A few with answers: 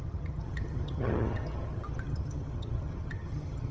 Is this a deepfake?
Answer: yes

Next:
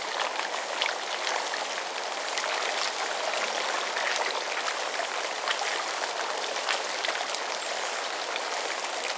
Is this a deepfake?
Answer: no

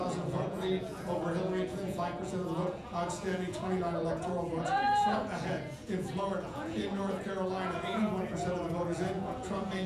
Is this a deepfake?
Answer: yes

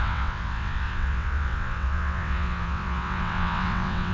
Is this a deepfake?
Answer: yes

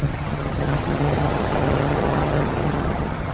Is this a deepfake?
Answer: yes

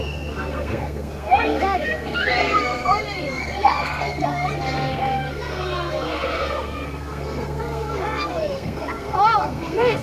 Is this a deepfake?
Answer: yes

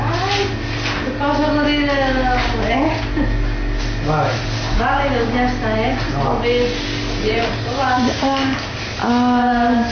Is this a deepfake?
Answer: no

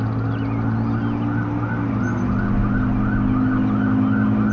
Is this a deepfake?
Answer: no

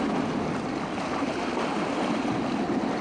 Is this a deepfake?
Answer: no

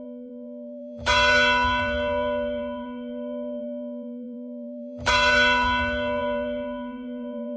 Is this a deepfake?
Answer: yes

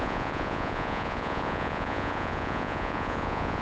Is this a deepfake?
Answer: yes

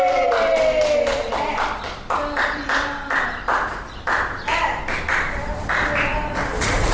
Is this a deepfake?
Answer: no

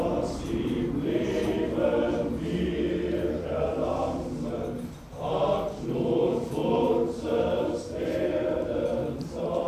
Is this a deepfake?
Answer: yes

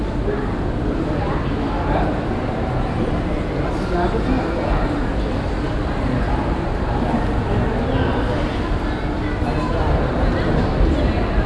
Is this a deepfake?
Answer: no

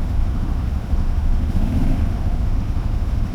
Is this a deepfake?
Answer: yes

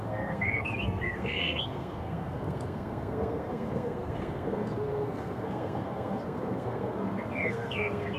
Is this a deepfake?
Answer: yes